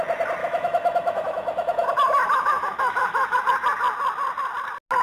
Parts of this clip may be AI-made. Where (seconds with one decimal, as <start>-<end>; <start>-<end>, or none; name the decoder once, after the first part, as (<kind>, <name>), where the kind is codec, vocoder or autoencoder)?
0.4-3.4 (autoencoder, DAC-VAE)

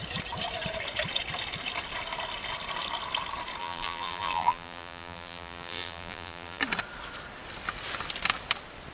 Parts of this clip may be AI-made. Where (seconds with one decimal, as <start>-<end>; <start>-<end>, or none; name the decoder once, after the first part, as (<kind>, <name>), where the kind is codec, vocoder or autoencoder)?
3.6-6.6 (vocoder, BigVGAN v2)

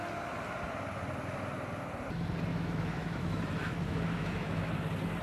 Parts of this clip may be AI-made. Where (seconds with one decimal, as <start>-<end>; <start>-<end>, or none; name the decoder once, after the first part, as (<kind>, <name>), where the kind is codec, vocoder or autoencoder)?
2.5-4.7 (autoencoder, DAC-VAE)